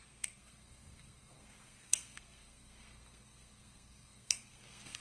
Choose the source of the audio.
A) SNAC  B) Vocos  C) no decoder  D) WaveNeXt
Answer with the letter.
A